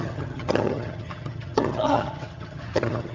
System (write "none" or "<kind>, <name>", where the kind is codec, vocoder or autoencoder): vocoder, HiFi-GAN